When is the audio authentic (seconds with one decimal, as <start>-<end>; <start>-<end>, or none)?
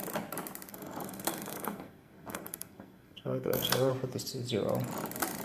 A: 0.0-0.7; 3.9-5.4